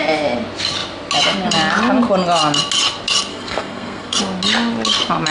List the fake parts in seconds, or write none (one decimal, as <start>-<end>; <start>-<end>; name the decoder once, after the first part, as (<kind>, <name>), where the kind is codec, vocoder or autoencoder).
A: 3.3-4.2 (codec, SNAC)